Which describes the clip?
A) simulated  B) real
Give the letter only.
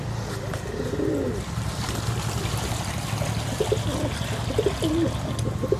B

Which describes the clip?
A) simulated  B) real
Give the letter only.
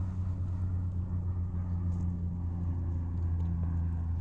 B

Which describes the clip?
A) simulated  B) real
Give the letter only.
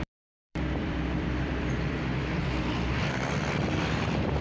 A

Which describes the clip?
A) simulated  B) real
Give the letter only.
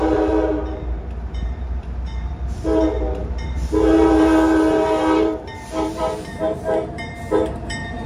A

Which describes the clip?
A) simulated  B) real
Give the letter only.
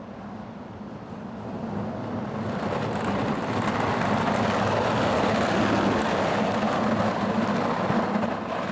B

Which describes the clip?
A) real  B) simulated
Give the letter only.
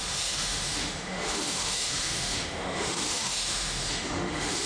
B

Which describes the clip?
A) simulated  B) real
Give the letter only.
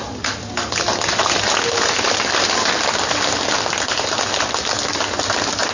B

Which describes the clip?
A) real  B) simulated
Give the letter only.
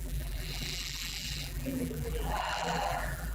B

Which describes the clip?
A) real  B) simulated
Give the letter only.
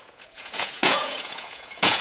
B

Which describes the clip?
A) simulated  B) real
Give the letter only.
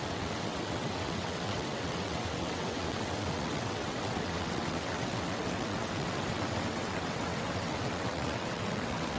A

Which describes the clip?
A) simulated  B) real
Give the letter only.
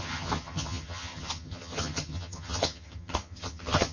A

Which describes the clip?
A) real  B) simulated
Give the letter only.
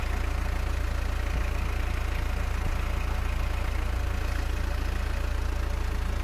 A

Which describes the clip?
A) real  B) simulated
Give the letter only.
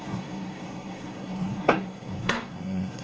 B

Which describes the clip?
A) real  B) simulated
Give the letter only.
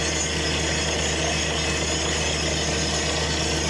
A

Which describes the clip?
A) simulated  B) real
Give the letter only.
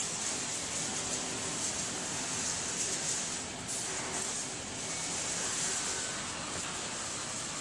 B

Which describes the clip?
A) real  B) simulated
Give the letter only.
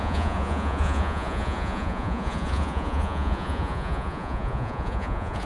B